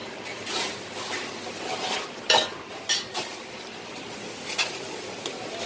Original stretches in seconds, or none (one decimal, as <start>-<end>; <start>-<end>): 0.0-5.7

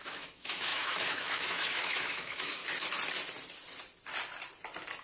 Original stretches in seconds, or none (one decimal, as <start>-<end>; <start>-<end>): 2.6-5.0

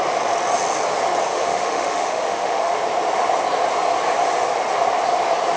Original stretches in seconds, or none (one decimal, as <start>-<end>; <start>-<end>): 0.0-1.3; 2.8-5.6

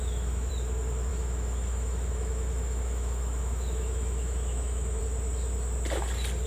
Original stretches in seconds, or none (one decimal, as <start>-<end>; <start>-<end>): 0.5-1.1; 5.0-6.5

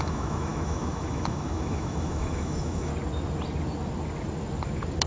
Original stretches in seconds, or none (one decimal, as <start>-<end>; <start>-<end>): 2.9-5.1